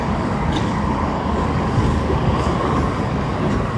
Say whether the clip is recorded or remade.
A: remade